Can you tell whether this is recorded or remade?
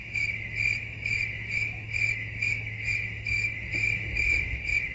remade